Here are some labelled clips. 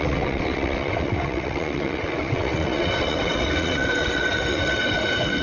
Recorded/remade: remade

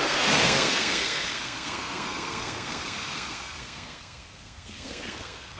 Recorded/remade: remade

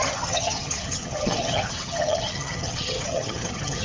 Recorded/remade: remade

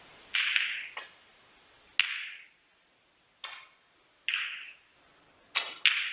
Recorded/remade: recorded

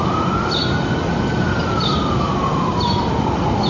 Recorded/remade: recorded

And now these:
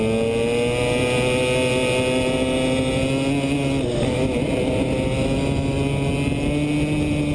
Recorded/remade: recorded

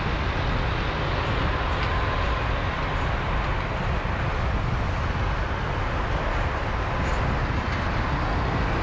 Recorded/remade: recorded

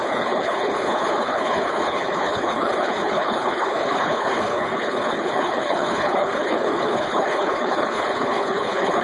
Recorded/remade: remade